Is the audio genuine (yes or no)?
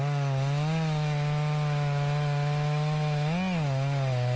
yes